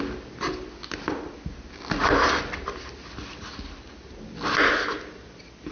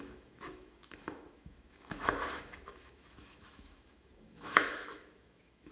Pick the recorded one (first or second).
first